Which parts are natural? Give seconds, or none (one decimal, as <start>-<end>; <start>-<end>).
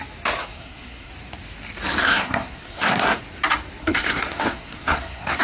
0.0-0.4; 1.1-2.0; 3.2-3.8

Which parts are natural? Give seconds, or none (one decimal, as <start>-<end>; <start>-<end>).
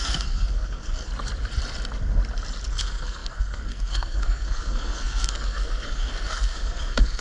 1.1-2.7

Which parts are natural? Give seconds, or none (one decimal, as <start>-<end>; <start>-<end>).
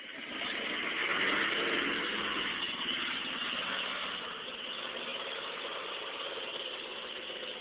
0.0-7.6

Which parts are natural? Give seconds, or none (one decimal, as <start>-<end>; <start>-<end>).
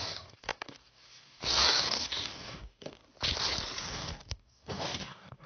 3.0-3.8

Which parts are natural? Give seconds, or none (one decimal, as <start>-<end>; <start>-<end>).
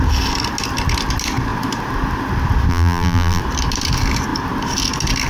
0.0-2.7; 3.4-5.3